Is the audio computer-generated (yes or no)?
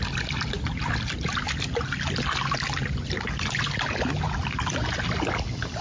no